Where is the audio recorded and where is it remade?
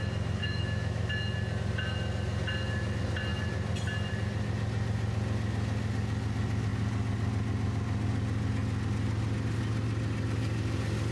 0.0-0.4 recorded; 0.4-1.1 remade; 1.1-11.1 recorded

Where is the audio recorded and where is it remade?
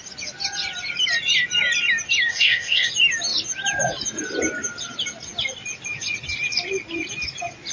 0.0-2.3 recorded; 2.3-2.9 remade; 2.9-7.7 recorded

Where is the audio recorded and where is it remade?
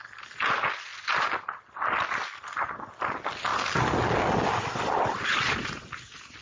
0.0-6.4 recorded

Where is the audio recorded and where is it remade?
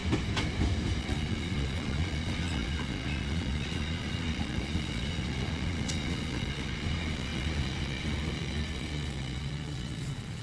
0.0-1.0 recorded; 1.0-10.4 remade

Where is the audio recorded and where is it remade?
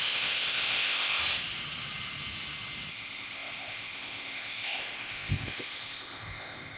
0.0-1.2 remade; 1.2-2.9 recorded; 2.9-6.8 remade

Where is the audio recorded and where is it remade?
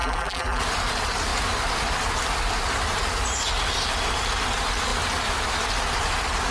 0.0-0.6 remade; 0.6-6.5 recorded